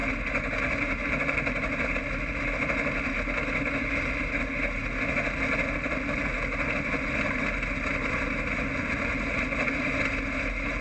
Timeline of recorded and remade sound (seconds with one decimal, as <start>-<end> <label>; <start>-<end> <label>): 0.0-10.8 recorded